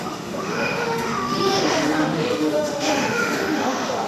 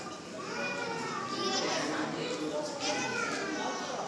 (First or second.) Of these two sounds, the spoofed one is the first